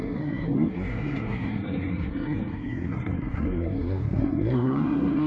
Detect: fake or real fake